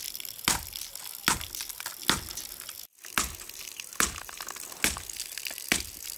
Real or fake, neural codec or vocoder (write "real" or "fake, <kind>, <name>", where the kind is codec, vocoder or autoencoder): real